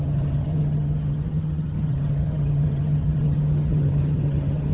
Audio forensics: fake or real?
fake